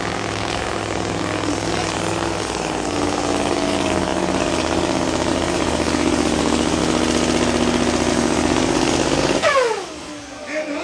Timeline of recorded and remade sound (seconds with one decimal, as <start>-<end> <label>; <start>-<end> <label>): 0.0-6.8 remade; 6.8-8.1 recorded; 8.1-10.8 remade